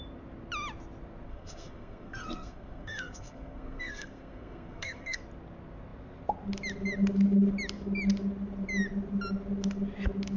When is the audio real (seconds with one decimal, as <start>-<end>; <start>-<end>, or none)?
0.0-1.3; 5.2-10.4